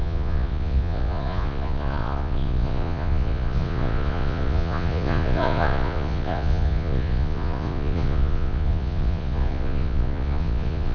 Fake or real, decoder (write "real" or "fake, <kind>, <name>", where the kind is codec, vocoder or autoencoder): fake, vocoder, Vocos